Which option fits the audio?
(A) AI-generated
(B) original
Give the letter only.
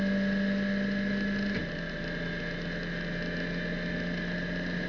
B